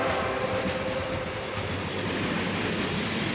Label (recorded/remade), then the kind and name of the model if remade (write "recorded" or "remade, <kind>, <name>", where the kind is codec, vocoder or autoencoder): recorded